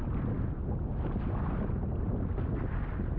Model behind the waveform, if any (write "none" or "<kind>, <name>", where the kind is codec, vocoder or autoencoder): none